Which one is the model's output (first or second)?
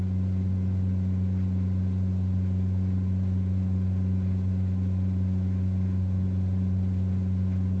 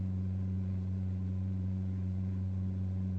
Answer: second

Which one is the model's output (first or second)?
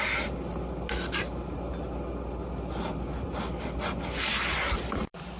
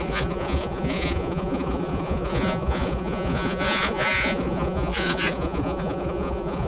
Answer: second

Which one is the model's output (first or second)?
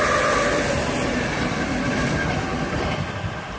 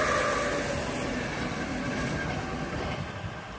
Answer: first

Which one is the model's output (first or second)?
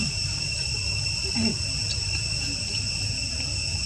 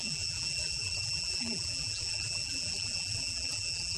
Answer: second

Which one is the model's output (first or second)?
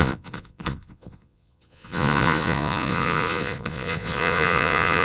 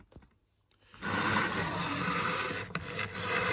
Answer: first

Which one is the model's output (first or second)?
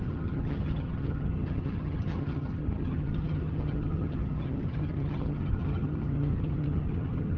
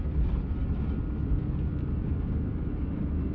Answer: first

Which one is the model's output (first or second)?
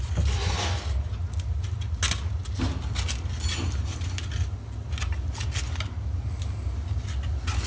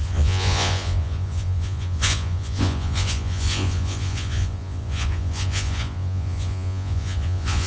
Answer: second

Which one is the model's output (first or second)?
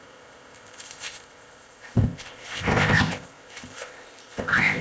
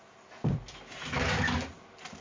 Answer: first